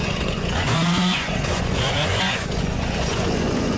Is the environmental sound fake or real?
fake